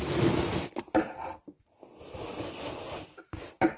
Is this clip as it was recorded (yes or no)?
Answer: yes